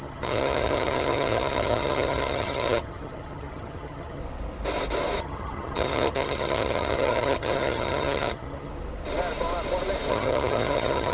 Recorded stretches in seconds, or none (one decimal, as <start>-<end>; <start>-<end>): 4.2-5.2; 8.7-10.1